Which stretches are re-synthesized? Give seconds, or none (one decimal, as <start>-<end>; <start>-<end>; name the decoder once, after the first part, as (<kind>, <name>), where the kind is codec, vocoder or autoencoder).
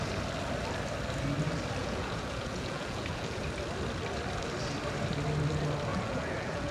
1.8-3.4 (vocoder, Vocos); 5.9-6.7